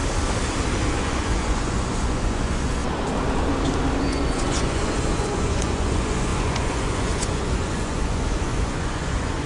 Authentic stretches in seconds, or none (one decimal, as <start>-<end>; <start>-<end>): 0.0-0.9; 2.8-4.0

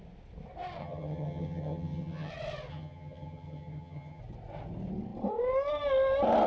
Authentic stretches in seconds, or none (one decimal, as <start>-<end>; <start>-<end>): 0.0-0.8; 2.3-2.7; 4.2-6.5

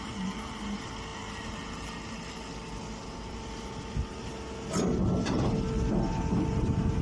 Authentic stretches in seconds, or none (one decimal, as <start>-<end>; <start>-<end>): 0.0-7.0

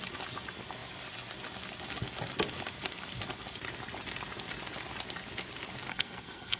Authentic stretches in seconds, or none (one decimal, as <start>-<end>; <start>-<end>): 0.0-5.9

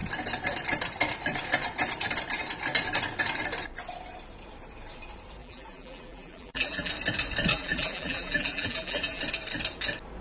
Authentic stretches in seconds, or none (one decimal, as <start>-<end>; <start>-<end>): 0.0-5.4; 6.9-7.5; 9.2-10.2

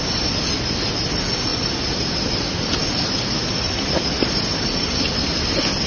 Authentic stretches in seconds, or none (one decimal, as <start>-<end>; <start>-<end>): 0.0-5.9

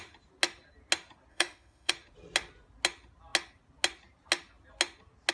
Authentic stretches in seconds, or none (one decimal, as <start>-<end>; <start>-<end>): 0.0-1.3; 1.9-5.3

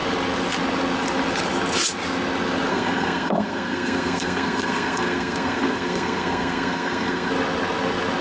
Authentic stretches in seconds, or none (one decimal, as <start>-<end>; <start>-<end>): 0.0-2.7; 7.3-8.2